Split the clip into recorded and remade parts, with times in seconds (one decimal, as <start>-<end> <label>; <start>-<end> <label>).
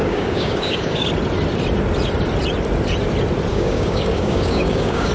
0.0-1.1 remade; 1.1-3.5 recorded; 3.5-5.1 remade